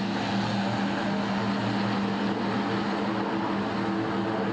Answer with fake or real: real